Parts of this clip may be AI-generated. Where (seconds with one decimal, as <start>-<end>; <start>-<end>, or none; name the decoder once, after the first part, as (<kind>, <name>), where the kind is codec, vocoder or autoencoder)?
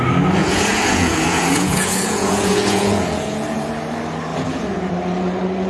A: 0.4-3.7 (vocoder, Vocos); 4.3-4.9